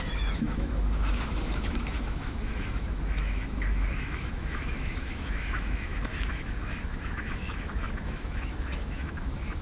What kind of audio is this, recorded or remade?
remade